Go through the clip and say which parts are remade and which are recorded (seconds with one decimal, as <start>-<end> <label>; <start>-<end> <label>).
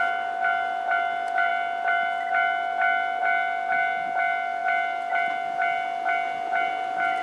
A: 0.0-7.2 recorded